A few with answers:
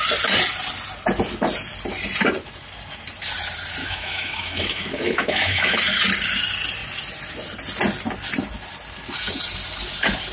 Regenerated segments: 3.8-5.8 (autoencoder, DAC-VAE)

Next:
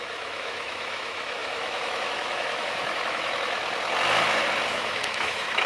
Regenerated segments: 0.0-3.6 (autoencoder, DAC-VAE); 4.7-5.7

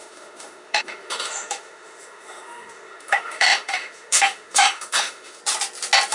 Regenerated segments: 0.0-5.4 (autoencoder, DAC-VAE)

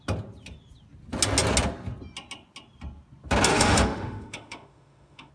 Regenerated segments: 3.5-5.3 (autoencoder, DAC-VAE)